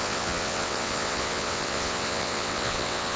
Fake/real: fake